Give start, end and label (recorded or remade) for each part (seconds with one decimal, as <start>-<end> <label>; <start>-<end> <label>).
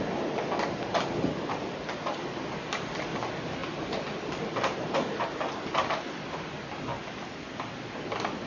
0.0-8.5 recorded